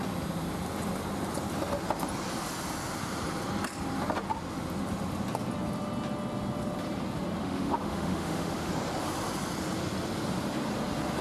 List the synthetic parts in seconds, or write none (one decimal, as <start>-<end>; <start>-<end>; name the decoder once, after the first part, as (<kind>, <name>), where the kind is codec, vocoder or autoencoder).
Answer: 7.4-8.7 (autoencoder, DAC-VAE)